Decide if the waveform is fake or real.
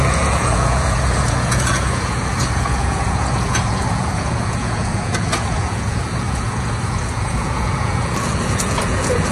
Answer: fake